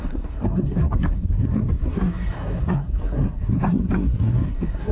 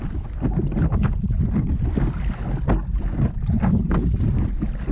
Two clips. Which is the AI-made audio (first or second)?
first